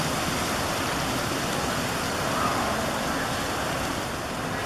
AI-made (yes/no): no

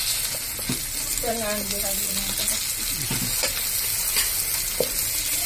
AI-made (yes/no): no